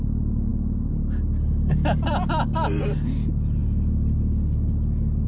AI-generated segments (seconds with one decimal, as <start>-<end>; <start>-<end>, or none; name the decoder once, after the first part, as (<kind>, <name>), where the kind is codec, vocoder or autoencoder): none